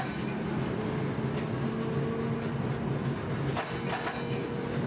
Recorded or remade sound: recorded